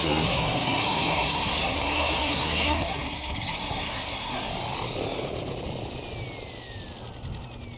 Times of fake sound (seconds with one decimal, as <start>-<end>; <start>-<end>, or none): 0.0-4.5